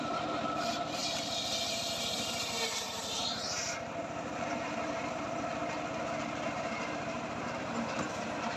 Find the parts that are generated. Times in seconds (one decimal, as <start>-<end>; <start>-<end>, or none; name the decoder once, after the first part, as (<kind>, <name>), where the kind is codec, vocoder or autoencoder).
0.0-8.6 (vocoder, BigVGAN v2)